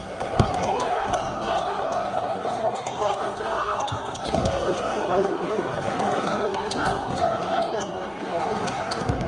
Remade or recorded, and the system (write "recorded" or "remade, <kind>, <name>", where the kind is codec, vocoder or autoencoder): remade, codec, SNAC